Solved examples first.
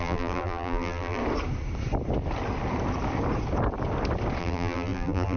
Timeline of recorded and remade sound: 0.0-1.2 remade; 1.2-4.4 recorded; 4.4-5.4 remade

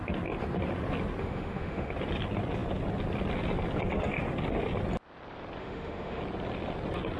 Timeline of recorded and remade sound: 0.0-1.2 recorded; 1.2-1.9 remade; 1.9-5.6 recorded; 5.6-6.2 remade; 6.2-7.2 recorded

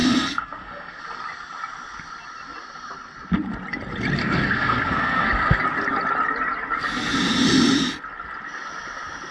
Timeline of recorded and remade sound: 0.0-1.0 remade; 1.0-4.2 recorded; 4.2-5.6 remade; 5.6-9.3 recorded

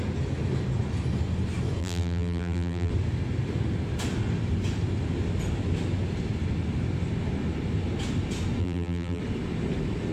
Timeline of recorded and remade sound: 0.0-1.8 recorded; 1.8-2.9 remade; 2.9-8.6 recorded; 8.6-9.2 remade; 9.2-10.1 recorded

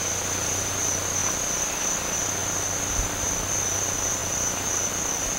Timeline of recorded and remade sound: 0.0-5.4 recorded

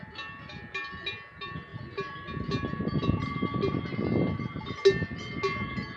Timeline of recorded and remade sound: 0.0-6.0 recorded